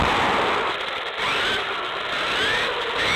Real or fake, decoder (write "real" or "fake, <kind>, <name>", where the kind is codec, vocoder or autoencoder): real